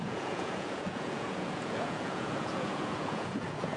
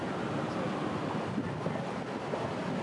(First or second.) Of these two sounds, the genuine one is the second